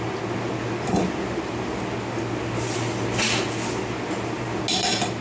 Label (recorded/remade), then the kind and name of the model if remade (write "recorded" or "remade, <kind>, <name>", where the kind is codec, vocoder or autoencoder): recorded